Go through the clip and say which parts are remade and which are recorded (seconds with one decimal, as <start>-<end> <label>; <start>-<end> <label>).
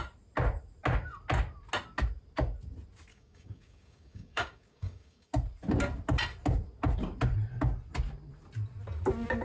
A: 0.0-3.1 recorded; 3.1-5.3 remade; 5.3-9.4 recorded